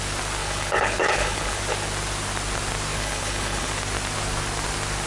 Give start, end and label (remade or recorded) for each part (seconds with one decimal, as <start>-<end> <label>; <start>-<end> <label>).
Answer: 0.0-0.4 recorded; 0.4-1.6 remade; 1.6-2.9 recorded; 2.9-3.7 remade; 3.7-5.1 recorded